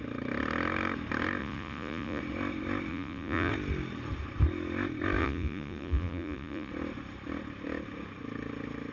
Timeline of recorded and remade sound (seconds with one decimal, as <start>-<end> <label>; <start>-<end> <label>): 0.0-1.4 recorded; 1.4-2.2 remade; 2.2-2.9 recorded; 2.9-3.5 remade; 3.5-5.2 recorded; 5.2-6.7 remade; 6.7-8.9 recorded